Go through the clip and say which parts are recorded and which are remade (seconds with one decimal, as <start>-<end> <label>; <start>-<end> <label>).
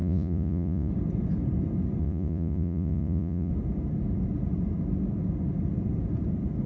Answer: 0.0-0.9 remade; 0.9-2.0 recorded; 2.0-3.5 remade; 3.5-6.7 recorded